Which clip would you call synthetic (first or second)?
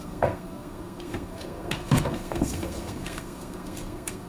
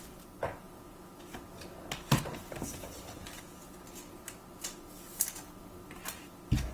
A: first